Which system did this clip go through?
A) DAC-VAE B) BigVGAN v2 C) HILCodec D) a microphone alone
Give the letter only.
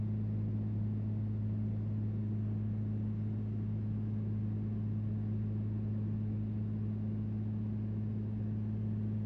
D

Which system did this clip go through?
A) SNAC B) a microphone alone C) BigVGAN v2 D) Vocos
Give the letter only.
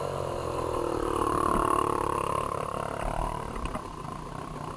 C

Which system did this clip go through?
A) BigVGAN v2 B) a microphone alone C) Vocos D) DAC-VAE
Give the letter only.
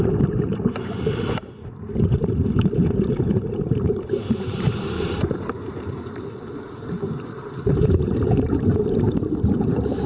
A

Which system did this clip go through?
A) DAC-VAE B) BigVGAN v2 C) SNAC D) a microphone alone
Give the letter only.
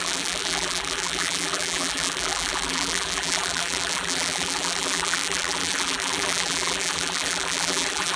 B